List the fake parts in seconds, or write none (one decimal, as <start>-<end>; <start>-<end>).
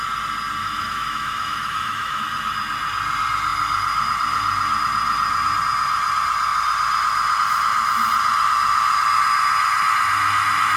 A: 0.6-2.2